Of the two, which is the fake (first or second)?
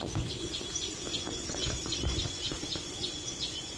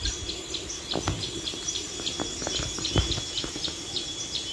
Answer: first